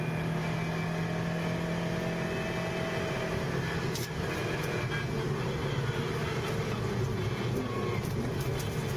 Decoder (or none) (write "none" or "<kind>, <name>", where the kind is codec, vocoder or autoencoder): none